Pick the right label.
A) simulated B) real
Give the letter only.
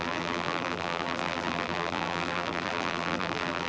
A